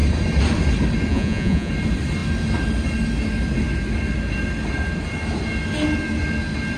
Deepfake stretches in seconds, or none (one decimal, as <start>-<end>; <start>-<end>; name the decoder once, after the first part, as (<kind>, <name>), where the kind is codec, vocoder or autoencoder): 1.1-1.7 (vocoder, Vocos)